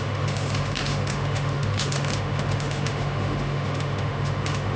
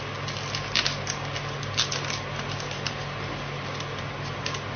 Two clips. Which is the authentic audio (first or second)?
second